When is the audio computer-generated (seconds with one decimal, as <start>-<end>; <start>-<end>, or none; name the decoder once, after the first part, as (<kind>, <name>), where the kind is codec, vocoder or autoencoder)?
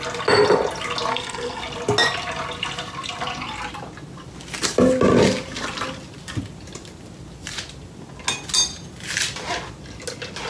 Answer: 1.1-1.6 (codec, SNAC)